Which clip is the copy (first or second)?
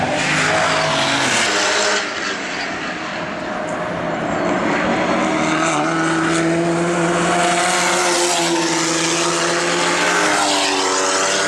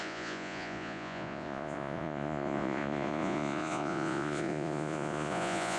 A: second